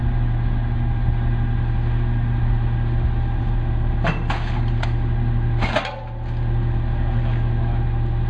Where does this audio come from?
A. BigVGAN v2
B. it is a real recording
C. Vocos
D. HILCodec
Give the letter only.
B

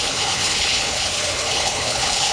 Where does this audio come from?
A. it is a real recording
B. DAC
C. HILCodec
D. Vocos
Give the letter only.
C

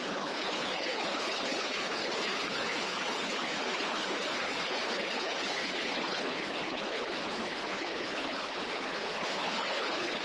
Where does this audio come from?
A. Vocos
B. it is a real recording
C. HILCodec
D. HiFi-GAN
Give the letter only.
C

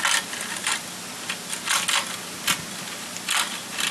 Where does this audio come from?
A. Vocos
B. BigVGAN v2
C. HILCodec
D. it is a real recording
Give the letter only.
D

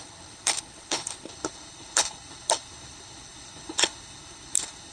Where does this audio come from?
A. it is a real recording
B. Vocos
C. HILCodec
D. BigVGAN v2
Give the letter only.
C